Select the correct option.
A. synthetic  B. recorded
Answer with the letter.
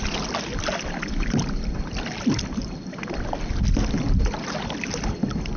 B